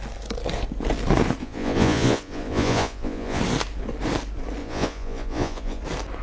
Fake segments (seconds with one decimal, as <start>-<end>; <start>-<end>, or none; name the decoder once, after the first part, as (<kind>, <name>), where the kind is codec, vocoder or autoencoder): 1.4-3.4 (vocoder, Vocos); 4.6-5.8